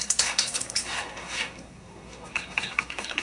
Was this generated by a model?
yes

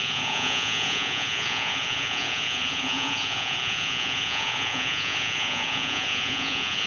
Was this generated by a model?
yes